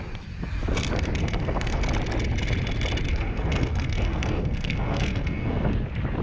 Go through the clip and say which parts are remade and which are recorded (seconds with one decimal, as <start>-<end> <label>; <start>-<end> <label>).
0.0-1.2 recorded; 1.2-1.8 remade; 1.8-3.1 recorded; 3.1-5.7 remade; 5.7-6.2 recorded

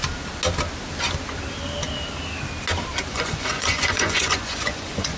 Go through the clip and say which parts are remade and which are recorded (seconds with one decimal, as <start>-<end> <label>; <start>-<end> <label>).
0.0-3.1 recorded; 3.1-5.2 remade

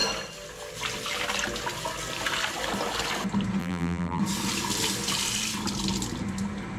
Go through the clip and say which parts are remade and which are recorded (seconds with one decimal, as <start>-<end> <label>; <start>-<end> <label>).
0.0-3.6 recorded; 3.6-4.2 remade; 4.2-6.8 recorded

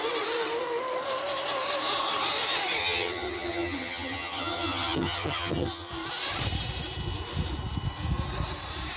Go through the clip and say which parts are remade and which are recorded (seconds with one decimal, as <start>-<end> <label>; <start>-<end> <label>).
0.0-2.8 recorded; 2.8-5.9 remade; 5.9-9.0 recorded